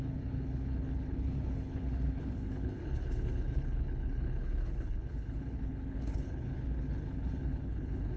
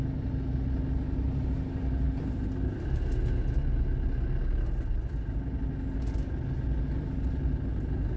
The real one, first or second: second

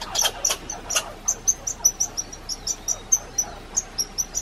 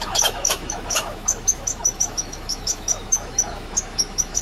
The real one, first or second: first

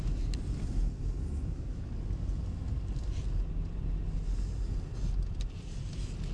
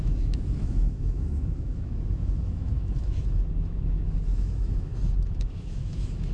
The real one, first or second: first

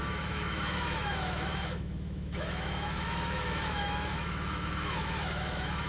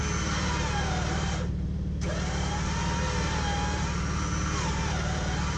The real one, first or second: second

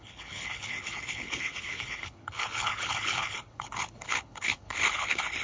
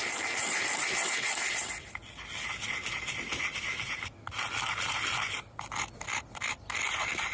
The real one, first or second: second